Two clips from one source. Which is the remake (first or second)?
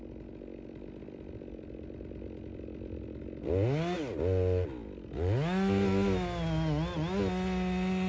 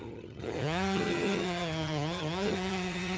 second